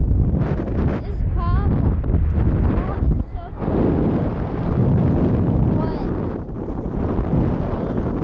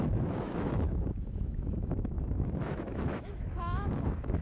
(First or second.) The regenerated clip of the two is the second